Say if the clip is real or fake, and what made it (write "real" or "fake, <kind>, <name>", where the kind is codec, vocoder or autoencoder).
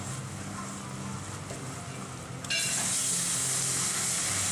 real